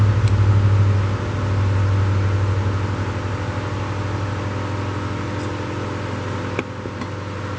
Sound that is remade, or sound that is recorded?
recorded